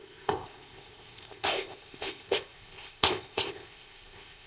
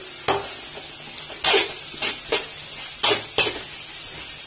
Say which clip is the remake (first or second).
first